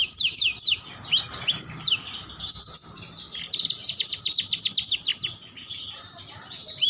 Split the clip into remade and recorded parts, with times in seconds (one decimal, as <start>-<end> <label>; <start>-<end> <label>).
0.0-0.8 remade; 0.8-2.8 recorded; 2.8-3.9 remade; 3.9-6.9 recorded